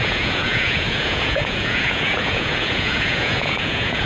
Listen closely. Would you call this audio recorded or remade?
remade